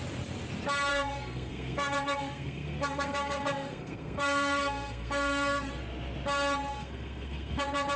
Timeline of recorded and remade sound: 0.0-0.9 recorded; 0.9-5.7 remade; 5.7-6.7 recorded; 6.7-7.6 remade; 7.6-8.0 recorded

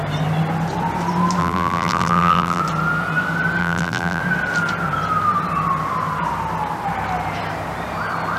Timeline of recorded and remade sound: 0.0-1.4 recorded; 1.4-2.6 remade; 2.6-3.6 recorded; 3.6-4.2 remade; 4.2-8.4 recorded

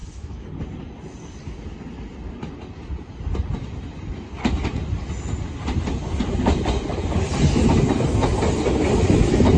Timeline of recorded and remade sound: 0.0-0.5 remade; 0.5-9.6 recorded

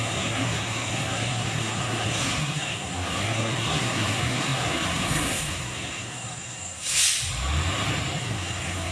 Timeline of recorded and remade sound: 0.0-7.0 remade; 7.0-8.2 recorded; 8.2-8.9 remade

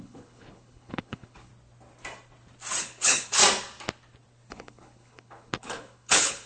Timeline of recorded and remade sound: 0.0-1.5 remade; 1.5-2.8 recorded; 2.8-3.4 remade; 3.4-4.5 recorded; 4.5-6.5 remade

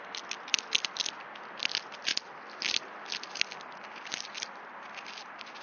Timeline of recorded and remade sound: 0.0-5.6 recorded

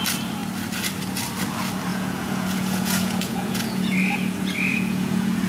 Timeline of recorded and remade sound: 0.0-1.9 recorded; 1.9-5.5 remade